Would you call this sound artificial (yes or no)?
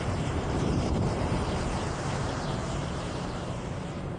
yes